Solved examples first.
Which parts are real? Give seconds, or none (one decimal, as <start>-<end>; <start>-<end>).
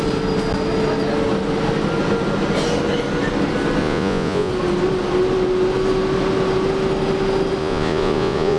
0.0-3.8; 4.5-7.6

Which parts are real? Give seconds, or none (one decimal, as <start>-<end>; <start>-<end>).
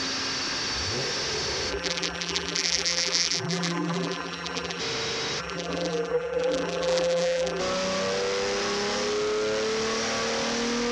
0.0-1.7; 4.8-5.4; 7.6-10.9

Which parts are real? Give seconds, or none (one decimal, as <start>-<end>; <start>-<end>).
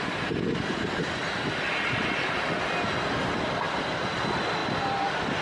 0.0-4.6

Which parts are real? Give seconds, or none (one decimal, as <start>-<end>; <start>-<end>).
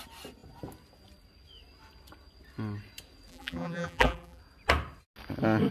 0.0-3.3; 4.4-5.7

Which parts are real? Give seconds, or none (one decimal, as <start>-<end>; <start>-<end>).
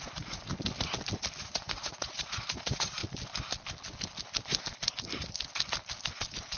0.5-1.4; 3.0-6.6